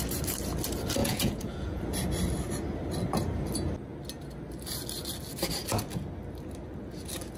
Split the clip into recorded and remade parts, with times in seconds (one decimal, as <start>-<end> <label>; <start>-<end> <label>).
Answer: 0.0-1.0 recorded; 1.0-1.8 remade; 1.8-7.4 recorded